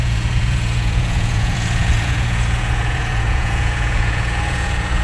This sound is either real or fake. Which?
fake